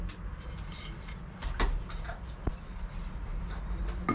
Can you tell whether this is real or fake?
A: real